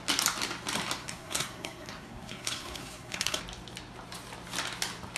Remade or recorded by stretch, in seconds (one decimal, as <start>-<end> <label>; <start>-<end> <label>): 0.0-1.0 recorded; 1.0-3.4 remade; 3.4-5.2 recorded